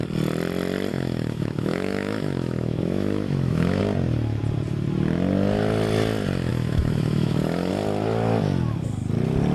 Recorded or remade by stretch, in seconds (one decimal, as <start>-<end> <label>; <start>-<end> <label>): 0.0-0.9 recorded; 0.9-3.8 remade; 3.8-6.5 recorded; 6.5-7.7 remade; 7.7-9.5 recorded